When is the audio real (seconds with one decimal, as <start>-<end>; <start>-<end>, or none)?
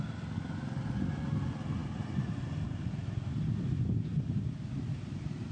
0.0-5.5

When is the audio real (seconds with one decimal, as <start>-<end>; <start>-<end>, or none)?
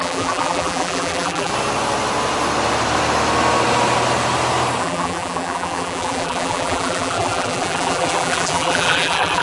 1.5-4.8